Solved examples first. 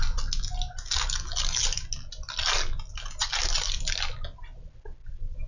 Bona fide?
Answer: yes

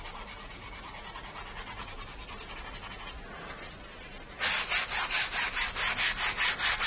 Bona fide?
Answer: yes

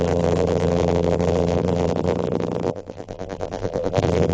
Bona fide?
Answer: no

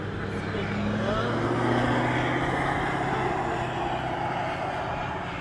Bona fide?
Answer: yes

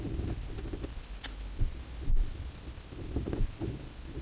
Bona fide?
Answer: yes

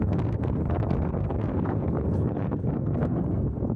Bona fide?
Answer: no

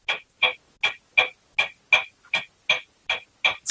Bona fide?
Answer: yes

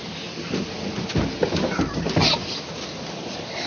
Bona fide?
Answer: yes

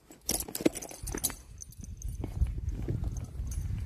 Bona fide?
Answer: yes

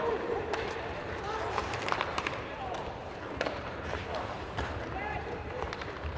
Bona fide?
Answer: no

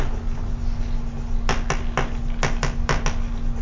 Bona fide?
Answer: yes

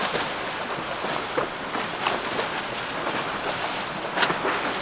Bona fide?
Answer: yes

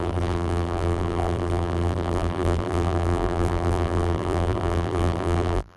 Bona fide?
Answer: no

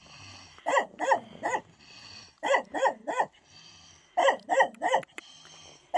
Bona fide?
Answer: yes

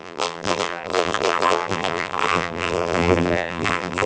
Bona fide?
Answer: no